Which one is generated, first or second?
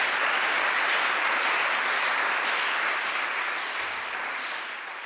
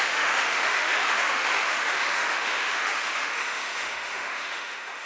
second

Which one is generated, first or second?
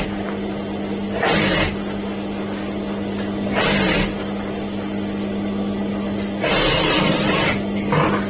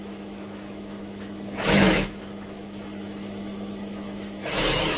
second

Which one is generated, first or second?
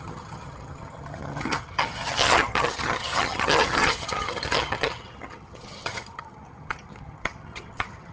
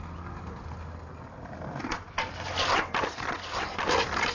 first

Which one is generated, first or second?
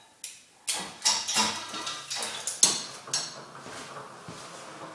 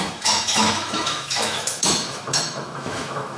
second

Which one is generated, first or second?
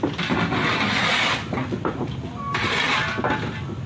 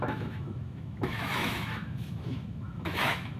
second